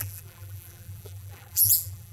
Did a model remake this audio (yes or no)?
yes